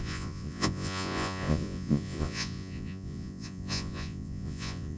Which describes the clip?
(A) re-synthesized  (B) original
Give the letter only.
A